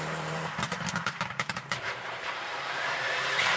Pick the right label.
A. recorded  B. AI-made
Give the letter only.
B